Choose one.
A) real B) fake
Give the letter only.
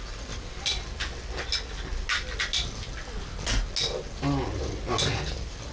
A